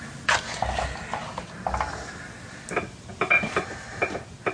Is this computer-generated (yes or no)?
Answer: no